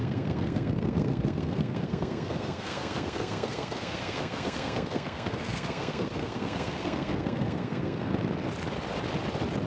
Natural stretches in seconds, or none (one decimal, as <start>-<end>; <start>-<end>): 8.1-9.7